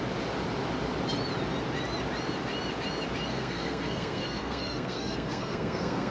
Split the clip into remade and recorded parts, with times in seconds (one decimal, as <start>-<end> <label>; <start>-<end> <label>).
0.0-3.3 recorded; 3.3-6.1 remade